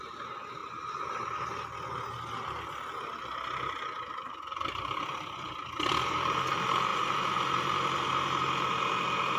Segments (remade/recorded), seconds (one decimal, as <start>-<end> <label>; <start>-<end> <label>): 0.0-6.9 recorded; 6.9-8.1 remade; 8.1-9.4 recorded